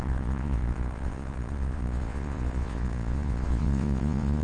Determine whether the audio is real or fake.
fake